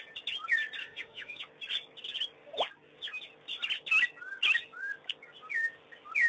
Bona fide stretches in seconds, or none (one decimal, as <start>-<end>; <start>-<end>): 0.0-0.8; 1.4-6.3